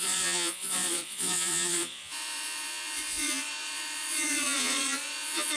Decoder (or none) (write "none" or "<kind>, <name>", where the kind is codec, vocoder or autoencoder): vocoder, Vocos